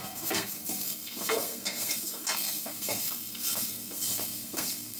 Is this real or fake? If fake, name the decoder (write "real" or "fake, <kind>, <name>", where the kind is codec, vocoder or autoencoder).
fake, codec, SNAC